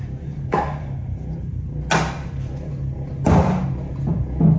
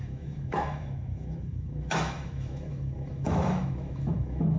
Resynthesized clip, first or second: second